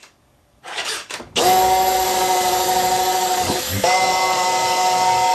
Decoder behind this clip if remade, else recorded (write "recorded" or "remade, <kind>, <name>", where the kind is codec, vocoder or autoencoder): remade, codec, DAC